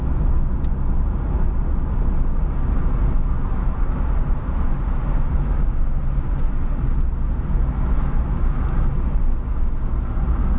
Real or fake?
real